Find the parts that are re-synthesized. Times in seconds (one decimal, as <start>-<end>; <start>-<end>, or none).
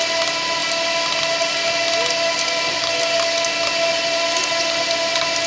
none